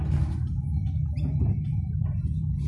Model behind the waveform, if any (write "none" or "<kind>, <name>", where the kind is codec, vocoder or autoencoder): none